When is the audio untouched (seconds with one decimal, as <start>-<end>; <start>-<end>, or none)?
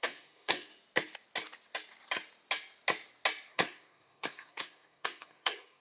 0.7-3.5